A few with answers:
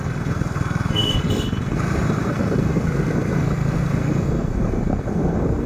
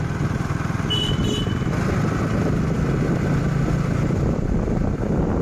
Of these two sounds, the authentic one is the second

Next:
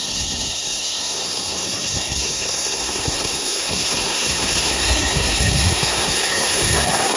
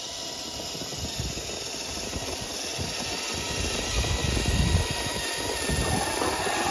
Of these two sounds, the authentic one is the second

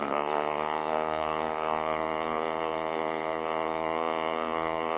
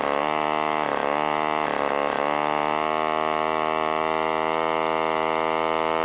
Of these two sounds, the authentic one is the second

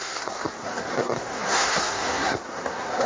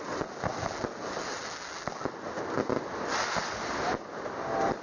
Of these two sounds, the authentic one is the second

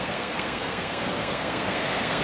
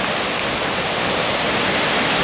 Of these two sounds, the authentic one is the second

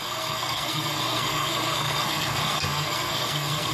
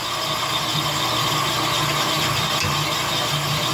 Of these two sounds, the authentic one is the second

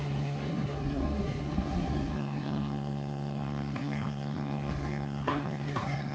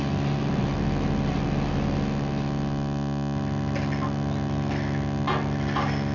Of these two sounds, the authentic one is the second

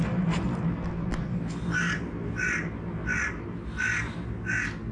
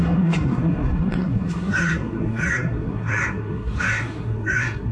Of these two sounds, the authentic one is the first